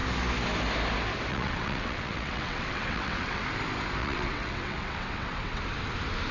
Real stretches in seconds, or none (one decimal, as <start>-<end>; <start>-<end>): 0.0-1.3; 3.4-4.0; 5.6-6.3